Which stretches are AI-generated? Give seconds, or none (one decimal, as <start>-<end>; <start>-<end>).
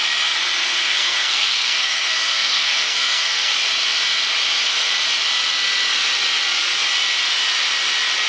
0.7-3.5